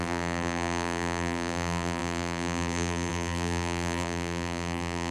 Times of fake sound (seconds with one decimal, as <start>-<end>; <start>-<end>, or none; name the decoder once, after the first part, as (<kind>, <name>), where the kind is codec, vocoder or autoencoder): 0.0-5.1 (vocoder, BigVGAN v2)